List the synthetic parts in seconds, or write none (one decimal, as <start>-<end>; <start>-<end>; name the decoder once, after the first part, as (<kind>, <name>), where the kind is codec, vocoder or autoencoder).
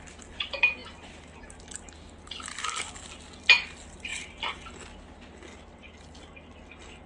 none